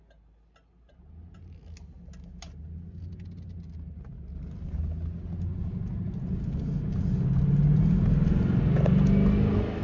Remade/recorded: recorded